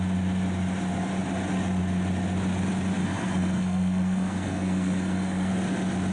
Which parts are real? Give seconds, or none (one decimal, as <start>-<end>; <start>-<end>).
0.0-3.0; 5.5-6.1